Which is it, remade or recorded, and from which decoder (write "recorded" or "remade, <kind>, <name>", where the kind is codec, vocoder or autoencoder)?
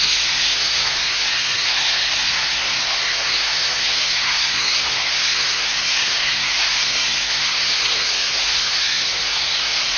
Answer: remade, codec, SNAC